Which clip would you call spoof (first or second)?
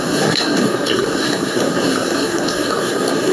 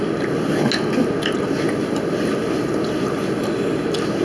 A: first